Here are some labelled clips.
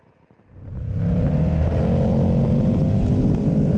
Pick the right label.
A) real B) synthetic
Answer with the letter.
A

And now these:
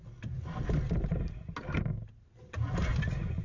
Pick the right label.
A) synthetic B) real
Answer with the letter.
B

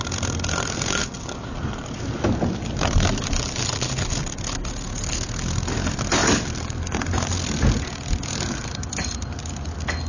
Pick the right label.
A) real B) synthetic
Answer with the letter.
A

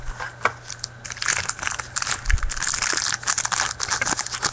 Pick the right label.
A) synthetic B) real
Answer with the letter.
B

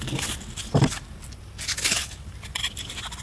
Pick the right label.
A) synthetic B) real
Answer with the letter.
B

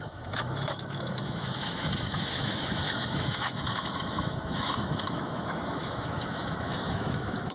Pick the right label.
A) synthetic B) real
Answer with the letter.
A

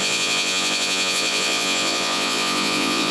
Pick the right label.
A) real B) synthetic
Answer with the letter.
B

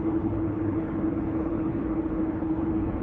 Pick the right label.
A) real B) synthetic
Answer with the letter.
B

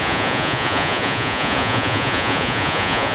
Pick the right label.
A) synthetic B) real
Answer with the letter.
A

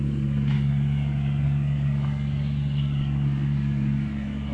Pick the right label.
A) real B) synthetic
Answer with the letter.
B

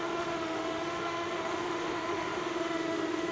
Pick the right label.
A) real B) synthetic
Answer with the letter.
B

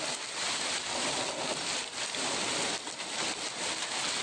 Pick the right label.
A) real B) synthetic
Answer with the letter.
A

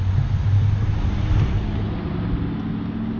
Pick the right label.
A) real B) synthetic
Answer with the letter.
A